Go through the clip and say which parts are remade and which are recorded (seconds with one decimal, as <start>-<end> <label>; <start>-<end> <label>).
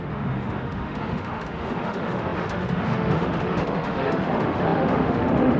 0.0-5.6 remade